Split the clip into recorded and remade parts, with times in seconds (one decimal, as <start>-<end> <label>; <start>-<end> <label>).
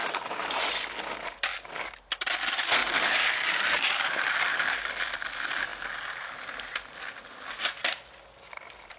0.0-0.6 remade; 0.6-2.8 recorded; 2.8-4.8 remade; 4.8-9.0 recorded